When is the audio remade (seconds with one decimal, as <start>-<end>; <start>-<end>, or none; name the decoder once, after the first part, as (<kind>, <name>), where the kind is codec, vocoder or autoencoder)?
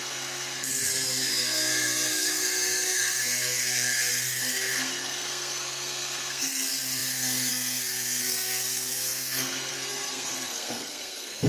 0.0-11.5 (codec, SNAC)